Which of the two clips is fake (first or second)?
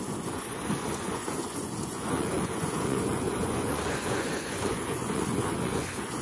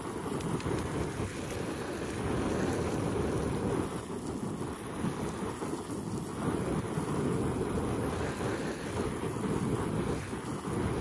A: first